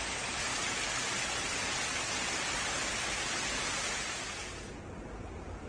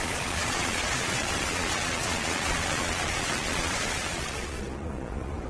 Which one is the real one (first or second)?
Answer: first